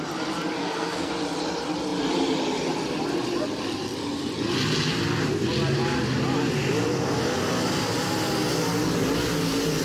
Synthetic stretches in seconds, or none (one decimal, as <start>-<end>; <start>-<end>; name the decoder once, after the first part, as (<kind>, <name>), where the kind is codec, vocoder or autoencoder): 0.6-1.1 (codec, SNAC)